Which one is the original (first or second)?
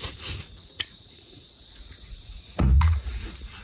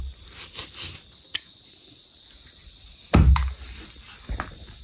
second